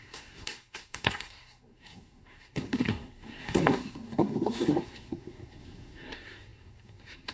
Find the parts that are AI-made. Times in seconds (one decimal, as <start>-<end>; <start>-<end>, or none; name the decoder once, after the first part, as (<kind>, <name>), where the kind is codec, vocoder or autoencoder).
0.0-7.3 (codec, SNAC)